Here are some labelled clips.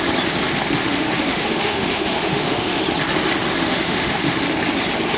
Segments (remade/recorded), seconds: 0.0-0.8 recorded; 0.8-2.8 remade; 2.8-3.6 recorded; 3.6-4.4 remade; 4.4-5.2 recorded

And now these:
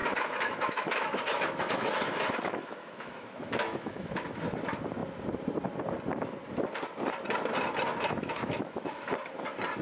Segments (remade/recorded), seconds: 0.0-4.4 remade; 4.4-8.2 recorded; 8.2-9.1 remade; 9.1-9.8 recorded

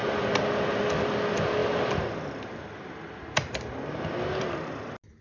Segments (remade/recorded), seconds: 0.0-5.2 recorded

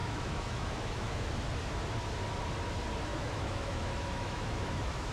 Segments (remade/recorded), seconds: 0.0-1.3 remade; 1.3-3.1 recorded; 3.1-5.1 remade

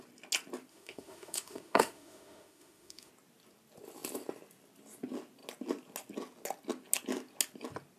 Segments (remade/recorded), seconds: 0.0-0.7 recorded; 0.7-3.1 remade; 3.1-8.0 recorded